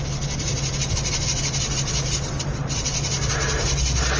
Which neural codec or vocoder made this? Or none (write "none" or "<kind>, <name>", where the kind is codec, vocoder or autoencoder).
none